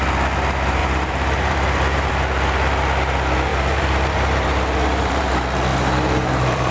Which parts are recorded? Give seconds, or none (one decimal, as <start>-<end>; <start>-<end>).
0.0-0.8; 2.1-3.5; 5.3-5.7

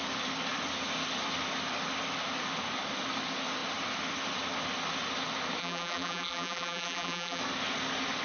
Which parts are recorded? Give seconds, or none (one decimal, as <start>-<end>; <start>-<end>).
0.0-5.6; 7.4-8.2

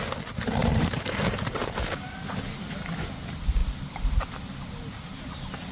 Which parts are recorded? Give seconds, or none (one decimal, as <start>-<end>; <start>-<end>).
0.0-0.6; 2.0-5.7

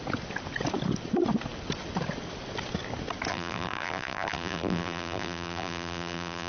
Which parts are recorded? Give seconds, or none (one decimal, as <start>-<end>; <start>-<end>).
0.0-3.3

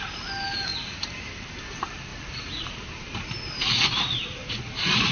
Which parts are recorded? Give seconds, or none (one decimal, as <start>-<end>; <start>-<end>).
0.0-0.7; 1.5-2.1

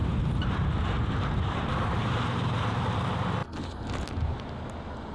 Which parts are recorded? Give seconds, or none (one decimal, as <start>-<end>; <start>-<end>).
2.8-5.1

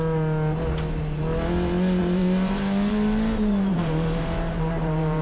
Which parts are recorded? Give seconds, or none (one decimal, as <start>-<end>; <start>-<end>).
0.0-2.0